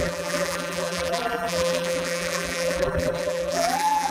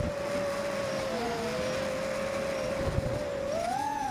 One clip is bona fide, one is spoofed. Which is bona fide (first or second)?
second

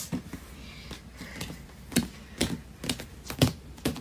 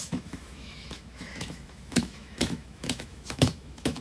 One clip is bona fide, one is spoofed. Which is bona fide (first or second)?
first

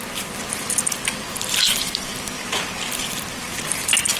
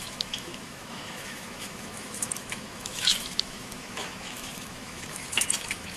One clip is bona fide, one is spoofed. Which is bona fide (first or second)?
first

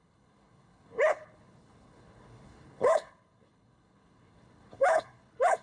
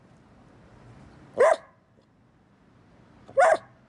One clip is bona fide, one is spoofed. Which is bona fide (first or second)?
second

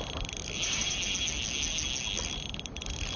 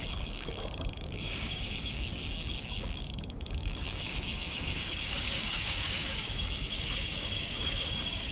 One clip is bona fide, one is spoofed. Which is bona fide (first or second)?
first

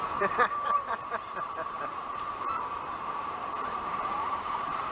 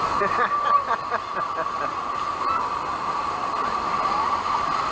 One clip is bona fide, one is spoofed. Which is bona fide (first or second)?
second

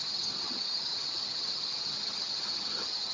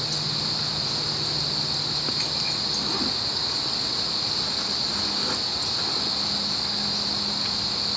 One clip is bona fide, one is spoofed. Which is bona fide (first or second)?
second